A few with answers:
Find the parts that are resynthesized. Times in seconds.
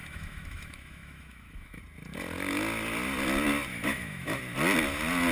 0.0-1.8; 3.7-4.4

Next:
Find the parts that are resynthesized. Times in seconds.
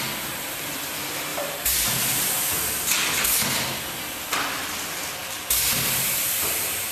1.3-2.3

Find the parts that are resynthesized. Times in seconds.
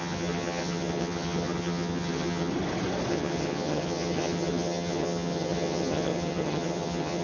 0.0-2.5; 3.1-7.2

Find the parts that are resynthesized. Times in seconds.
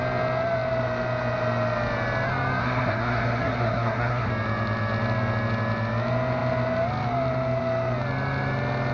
2.6-4.3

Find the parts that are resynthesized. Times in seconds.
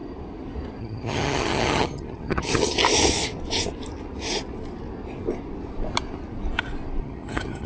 0.8-2.8; 7.0-7.7